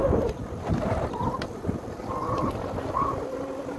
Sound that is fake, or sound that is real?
real